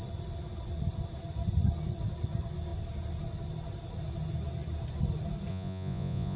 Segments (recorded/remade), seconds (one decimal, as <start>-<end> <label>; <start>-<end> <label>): 0.0-5.5 recorded; 5.5-6.4 remade